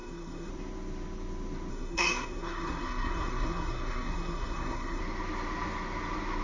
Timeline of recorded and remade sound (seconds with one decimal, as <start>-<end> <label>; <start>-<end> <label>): 0.0-0.5 remade; 0.5-1.7 recorded; 1.7-5.0 remade; 5.0-6.4 recorded